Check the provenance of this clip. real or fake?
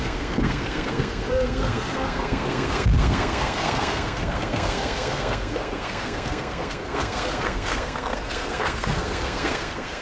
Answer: fake